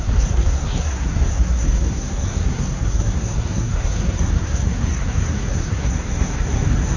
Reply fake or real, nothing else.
fake